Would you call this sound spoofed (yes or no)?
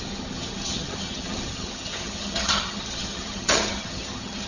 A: yes